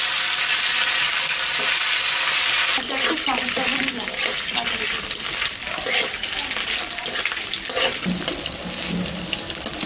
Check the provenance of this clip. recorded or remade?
recorded